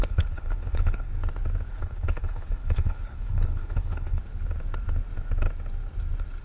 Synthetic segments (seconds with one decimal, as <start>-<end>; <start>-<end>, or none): 0.0-1.1; 1.7-4.2